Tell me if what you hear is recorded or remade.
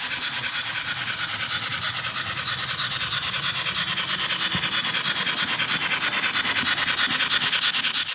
recorded